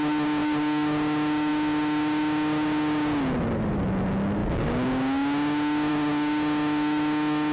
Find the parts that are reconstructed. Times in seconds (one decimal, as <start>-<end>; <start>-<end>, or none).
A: none

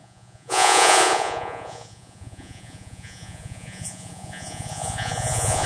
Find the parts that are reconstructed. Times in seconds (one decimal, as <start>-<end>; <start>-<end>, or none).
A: 0.0-5.7

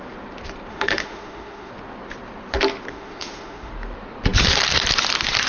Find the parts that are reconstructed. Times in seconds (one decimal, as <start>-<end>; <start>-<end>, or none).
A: 0.7-1.7; 2.9-3.7

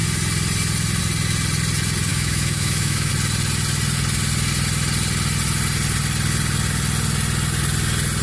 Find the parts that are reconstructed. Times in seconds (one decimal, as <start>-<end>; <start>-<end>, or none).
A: 2.1-3.1

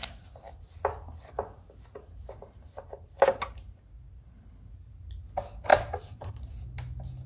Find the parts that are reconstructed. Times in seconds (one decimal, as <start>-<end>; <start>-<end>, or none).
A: 5.7-6.3

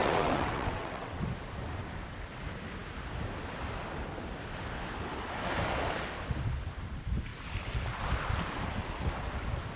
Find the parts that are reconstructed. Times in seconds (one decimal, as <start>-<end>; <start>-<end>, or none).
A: 0.0-1.2